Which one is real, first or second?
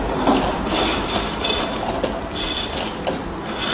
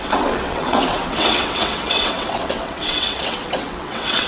first